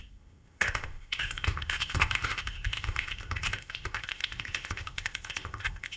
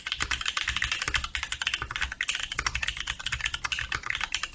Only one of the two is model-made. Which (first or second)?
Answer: first